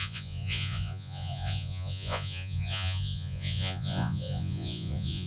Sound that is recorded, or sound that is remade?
remade